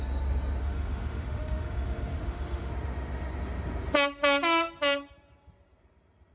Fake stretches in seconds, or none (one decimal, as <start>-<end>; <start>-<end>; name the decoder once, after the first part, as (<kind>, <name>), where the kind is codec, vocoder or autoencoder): 0.6-2.7 (autoencoder, DAC-VAE)

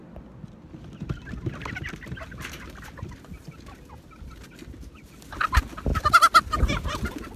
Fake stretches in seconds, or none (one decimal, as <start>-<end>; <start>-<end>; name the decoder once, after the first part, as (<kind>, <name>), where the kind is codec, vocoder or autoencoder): none

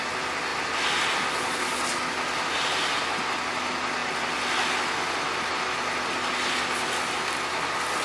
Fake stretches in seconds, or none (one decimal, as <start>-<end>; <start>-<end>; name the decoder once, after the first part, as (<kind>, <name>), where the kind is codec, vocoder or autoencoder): none

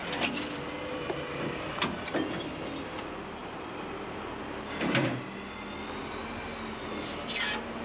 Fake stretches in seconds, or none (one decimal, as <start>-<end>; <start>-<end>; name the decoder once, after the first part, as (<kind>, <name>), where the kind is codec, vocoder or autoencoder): none

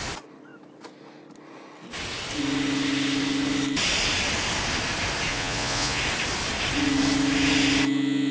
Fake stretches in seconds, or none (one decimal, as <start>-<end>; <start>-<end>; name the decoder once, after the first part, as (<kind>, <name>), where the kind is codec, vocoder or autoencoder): 5.3-6.0 (vocoder, Vocos)